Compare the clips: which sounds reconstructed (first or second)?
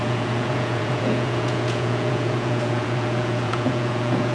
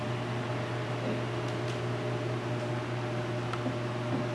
first